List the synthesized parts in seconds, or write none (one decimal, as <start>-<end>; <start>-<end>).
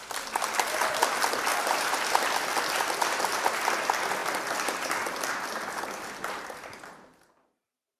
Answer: 1.5-2.2